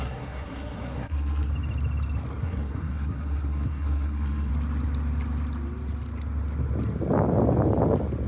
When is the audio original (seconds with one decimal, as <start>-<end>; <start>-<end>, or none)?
1.5-2.4; 4.5-8.3